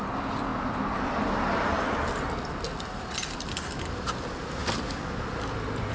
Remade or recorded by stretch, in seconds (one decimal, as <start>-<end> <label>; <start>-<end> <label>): 0.0-5.9 recorded